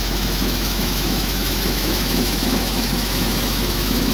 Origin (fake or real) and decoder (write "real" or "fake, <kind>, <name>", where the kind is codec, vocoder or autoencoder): fake, autoencoder, DAC-VAE